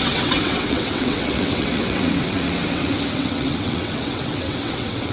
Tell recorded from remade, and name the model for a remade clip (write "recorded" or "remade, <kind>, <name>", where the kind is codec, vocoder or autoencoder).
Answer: remade, vocoder, WaveNeXt